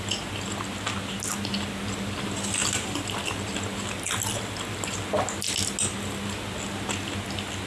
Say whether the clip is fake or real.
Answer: real